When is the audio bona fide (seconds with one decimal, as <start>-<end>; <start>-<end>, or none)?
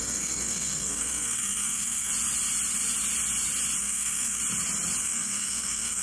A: 2.1-3.8; 4.4-5.0